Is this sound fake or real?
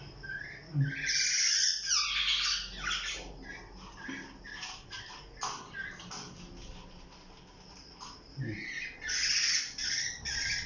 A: real